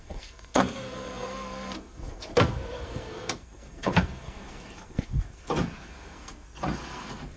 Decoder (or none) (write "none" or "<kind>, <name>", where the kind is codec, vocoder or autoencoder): codec, SNAC